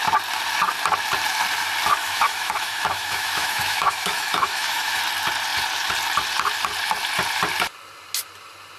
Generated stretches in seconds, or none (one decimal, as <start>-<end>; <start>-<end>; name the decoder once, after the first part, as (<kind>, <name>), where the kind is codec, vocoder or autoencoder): 2.0-5.0 (autoencoder, DAC-VAE)